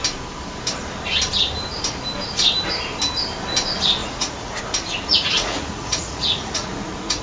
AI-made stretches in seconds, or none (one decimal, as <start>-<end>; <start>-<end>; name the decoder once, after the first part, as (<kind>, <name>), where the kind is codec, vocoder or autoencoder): 4.0-4.6 (vocoder, Vocos); 5.1-7.2